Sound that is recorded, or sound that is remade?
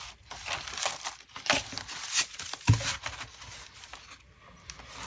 recorded